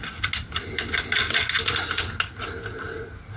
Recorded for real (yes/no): yes